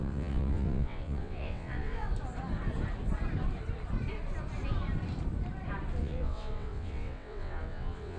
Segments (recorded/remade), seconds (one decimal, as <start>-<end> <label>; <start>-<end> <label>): 0.0-2.1 remade; 2.1-6.0 recorded; 6.0-8.2 remade